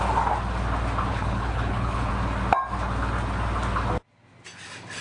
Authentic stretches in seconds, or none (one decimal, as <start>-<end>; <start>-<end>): 0.0-1.1; 2.1-5.0